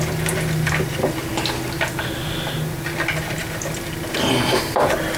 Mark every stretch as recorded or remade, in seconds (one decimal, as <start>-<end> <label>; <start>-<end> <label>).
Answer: 0.0-5.2 recorded